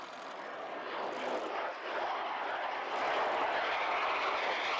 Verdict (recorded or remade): recorded